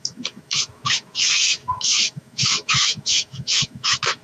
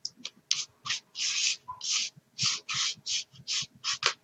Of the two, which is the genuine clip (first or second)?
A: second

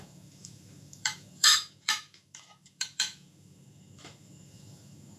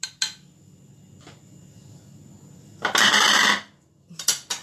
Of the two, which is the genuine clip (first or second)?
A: second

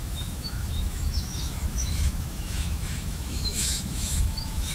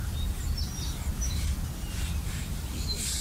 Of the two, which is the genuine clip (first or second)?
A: second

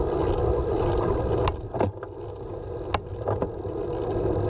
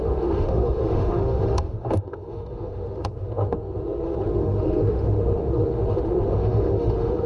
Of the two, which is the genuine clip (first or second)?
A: first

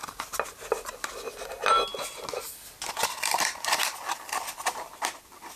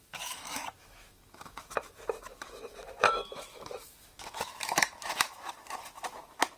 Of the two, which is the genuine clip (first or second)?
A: first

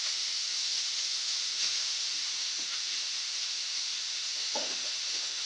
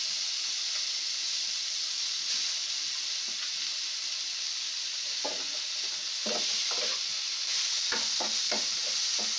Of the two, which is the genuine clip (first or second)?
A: second